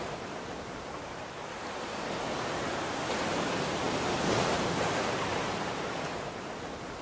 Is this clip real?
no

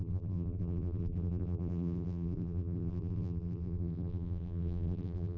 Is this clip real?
no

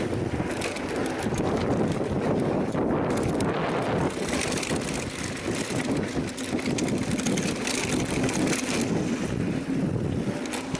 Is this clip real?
yes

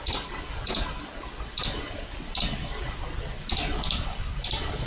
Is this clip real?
yes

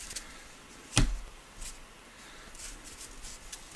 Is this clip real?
yes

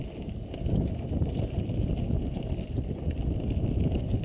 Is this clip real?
yes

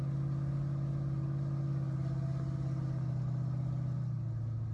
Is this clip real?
yes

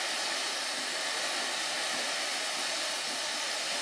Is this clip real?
no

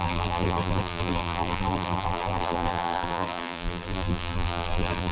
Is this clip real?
no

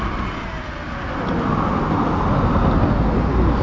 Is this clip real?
yes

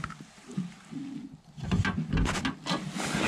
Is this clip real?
yes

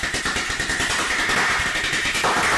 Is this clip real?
yes